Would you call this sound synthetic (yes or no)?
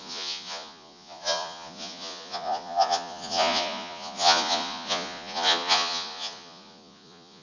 yes